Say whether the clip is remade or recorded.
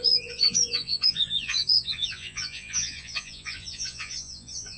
remade